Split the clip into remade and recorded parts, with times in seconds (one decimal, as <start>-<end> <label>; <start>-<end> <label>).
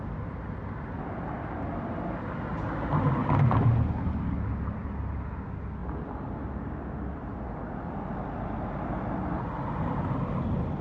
0.0-10.8 recorded